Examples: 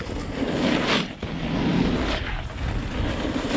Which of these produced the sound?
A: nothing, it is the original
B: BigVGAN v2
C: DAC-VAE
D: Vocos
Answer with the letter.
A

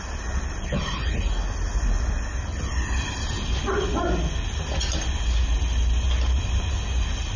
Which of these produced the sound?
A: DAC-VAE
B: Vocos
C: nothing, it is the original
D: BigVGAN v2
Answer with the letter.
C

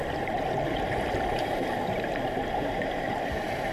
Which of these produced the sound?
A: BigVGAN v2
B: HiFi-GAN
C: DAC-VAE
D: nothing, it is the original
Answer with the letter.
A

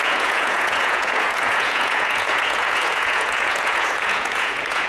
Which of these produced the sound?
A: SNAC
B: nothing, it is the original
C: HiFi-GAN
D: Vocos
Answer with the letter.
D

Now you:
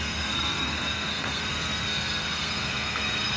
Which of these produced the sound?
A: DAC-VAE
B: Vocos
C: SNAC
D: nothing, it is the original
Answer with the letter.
C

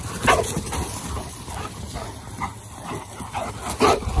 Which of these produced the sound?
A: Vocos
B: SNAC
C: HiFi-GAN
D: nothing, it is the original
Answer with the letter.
D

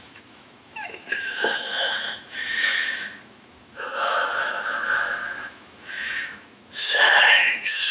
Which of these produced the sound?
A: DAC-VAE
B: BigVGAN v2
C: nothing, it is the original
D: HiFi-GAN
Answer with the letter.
A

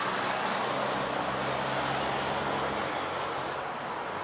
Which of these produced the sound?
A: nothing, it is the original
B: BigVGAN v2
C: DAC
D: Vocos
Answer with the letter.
A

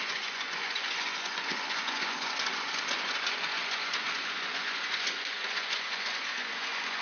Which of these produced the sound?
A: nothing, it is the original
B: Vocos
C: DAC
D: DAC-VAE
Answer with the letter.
B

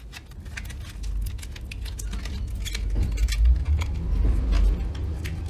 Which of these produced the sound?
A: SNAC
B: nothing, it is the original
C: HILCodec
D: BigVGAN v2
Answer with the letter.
B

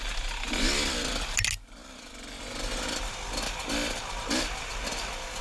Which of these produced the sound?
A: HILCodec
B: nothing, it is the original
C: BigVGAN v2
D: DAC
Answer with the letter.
B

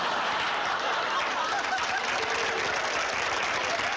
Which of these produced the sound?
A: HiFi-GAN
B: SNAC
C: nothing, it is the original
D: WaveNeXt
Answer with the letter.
C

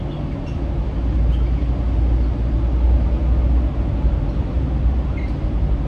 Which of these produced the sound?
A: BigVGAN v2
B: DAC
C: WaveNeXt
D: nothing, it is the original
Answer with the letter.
D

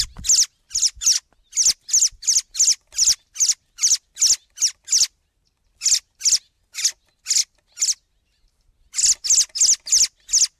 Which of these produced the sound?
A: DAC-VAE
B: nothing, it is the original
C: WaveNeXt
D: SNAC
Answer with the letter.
B